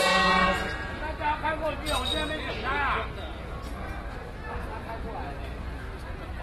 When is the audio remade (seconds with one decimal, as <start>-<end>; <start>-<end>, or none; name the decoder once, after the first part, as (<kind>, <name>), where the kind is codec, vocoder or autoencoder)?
1.0-1.7 (vocoder, BigVGAN v2)